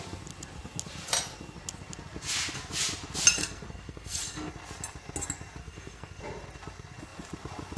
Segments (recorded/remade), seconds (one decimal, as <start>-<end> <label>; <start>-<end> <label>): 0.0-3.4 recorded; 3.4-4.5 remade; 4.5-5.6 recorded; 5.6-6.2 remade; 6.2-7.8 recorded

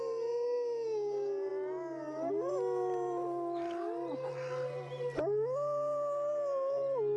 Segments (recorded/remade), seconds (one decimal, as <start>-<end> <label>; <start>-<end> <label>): 0.0-7.2 recorded

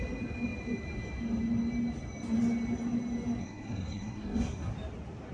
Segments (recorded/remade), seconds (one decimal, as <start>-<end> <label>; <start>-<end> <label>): 0.0-3.4 recorded; 3.4-4.7 remade; 4.7-5.3 recorded

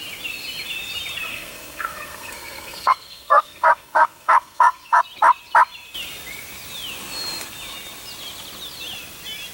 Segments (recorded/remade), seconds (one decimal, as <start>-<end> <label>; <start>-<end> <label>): 0.0-1.3 recorded; 1.3-5.0 remade; 5.0-9.5 recorded

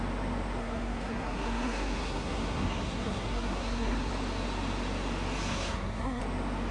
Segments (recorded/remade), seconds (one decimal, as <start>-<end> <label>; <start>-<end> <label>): 0.0-0.6 recorded; 0.6-4.1 remade; 4.1-5.5 recorded; 5.5-6.2 remade; 6.2-6.7 recorded